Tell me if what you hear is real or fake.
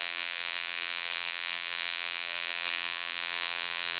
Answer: fake